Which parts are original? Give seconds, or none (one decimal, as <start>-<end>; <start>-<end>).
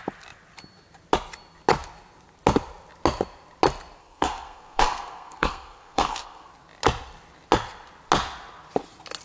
0.0-4.0; 6.5-9.2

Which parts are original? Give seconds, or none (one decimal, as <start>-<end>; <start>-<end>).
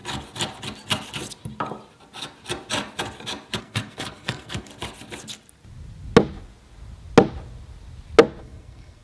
0.0-3.6; 4.7-8.4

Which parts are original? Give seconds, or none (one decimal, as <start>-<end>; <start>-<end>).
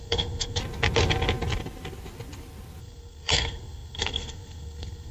0.6-2.8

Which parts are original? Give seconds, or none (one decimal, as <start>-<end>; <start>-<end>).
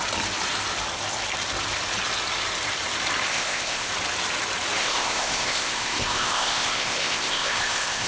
0.0-3.3; 3.9-4.8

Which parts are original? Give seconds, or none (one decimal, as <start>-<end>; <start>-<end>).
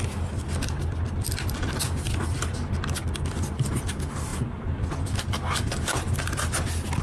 0.0-7.0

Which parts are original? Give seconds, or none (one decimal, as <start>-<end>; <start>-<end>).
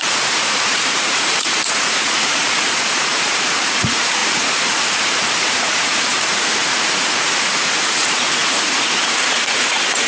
none